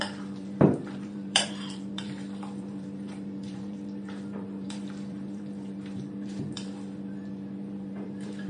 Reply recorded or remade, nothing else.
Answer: remade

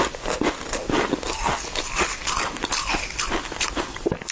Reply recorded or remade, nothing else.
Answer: recorded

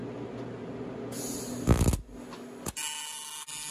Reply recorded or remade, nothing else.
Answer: recorded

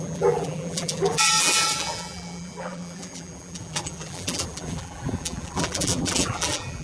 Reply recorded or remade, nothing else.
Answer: remade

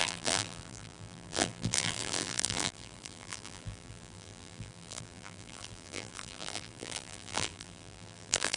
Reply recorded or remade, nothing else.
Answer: remade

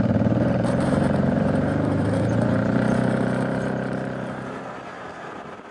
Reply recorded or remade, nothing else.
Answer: remade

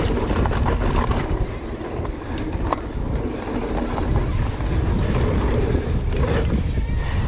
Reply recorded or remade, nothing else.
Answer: recorded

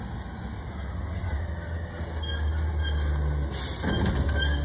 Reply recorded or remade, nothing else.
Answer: recorded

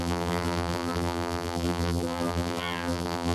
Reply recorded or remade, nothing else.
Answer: remade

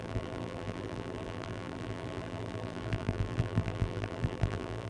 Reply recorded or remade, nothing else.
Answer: remade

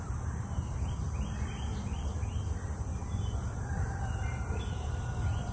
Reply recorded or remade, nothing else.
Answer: remade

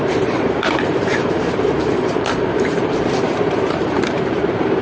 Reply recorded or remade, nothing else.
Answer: remade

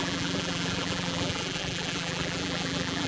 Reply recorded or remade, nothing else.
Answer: remade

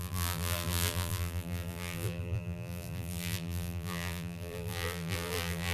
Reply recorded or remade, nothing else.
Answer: remade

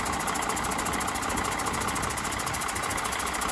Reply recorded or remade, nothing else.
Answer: recorded